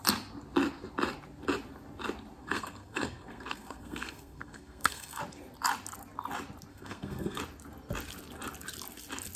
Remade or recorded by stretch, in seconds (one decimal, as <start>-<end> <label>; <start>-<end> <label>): 0.0-2.4 recorded; 2.4-5.2 remade; 5.2-6.7 recorded; 6.7-7.4 remade; 7.4-9.4 recorded